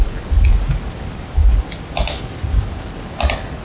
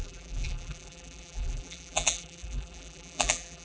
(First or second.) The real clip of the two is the first